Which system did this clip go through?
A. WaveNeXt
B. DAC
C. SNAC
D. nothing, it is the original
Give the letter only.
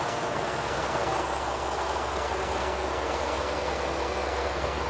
C